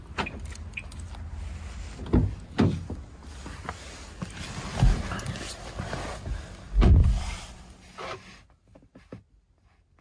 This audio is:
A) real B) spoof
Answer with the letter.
A